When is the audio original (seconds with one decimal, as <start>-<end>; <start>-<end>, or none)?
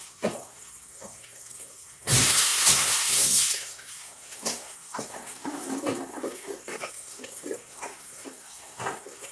none